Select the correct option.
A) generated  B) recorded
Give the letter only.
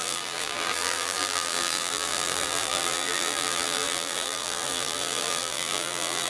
A